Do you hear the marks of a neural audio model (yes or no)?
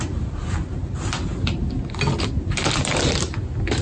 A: no